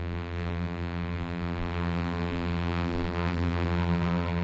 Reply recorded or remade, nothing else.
remade